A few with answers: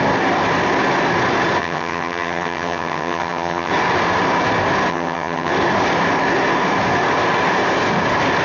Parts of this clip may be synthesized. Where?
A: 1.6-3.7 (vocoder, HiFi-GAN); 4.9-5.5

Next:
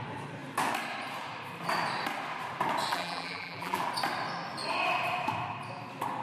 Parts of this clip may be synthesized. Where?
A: 2.9-3.8 (vocoder, BigVGAN v2)

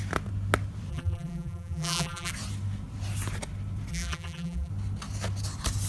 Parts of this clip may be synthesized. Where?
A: 0.9-2.3 (vocoder, BigVGAN v2); 3.9-4.7

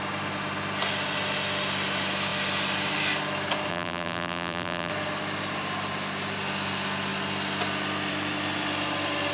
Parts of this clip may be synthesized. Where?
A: 3.7-4.9 (vocoder, BigVGAN v2)

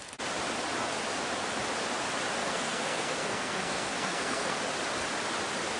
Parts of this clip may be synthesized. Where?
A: 2.4-4.6 (codec, SNAC)